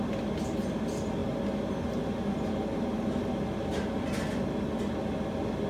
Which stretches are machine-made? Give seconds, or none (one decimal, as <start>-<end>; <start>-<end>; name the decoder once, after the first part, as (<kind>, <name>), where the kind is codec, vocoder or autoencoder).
none